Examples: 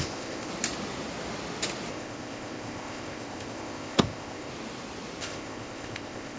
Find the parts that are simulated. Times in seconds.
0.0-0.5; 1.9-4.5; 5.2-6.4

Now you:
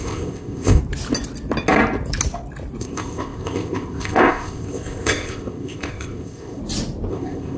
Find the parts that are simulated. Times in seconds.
0.0-0.8; 2.8-6.6; 7.1-7.6